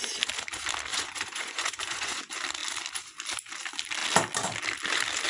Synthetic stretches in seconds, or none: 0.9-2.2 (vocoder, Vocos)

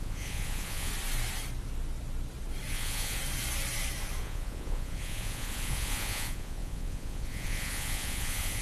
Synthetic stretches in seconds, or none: 0.0-0.9 (vocoder, Vocos); 2.7-3.2; 4.2-8.6

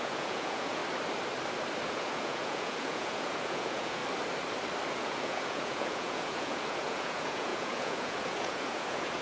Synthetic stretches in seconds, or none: 0.0-0.8 (vocoder, Vocos); 2.0-4.0; 4.9-9.2